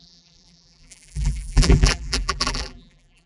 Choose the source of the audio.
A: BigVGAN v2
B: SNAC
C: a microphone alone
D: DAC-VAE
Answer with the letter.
A